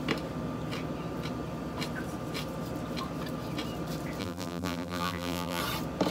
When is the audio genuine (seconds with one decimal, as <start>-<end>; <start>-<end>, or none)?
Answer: 0.0-4.2; 5.6-6.1